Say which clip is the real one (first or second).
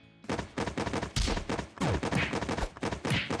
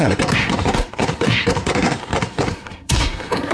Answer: first